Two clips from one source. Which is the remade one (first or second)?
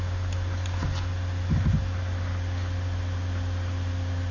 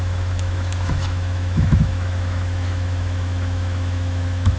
second